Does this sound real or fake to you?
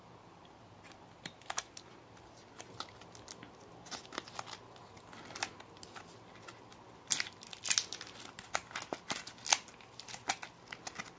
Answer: real